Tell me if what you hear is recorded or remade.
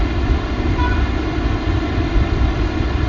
recorded